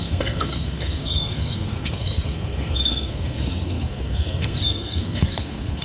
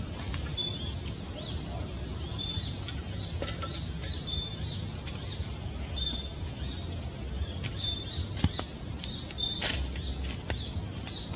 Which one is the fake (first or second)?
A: first